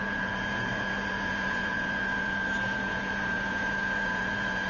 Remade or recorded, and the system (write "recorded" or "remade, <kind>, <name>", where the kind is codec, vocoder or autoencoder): remade, vocoder, Vocos